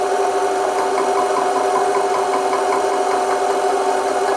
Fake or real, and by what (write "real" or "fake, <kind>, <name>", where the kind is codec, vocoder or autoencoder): real